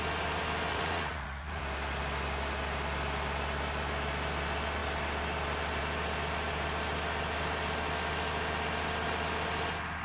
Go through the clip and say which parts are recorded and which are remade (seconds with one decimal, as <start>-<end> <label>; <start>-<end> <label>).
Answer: 0.0-0.7 recorded; 0.7-1.6 remade; 1.6-10.0 recorded